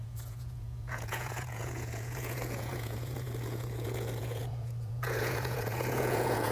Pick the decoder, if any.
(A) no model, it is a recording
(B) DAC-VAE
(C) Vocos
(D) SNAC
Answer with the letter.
C